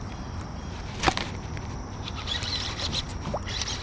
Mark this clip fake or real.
real